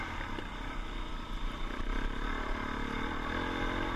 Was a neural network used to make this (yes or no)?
no